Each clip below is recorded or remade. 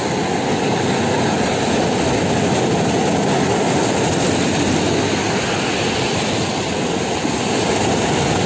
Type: recorded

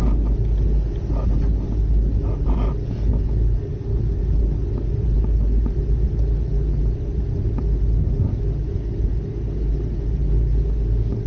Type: recorded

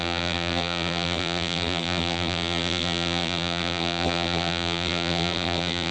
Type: remade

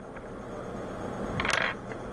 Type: recorded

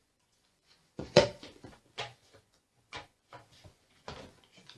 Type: remade